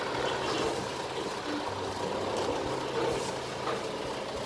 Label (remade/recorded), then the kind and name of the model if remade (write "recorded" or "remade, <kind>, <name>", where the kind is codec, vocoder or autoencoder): recorded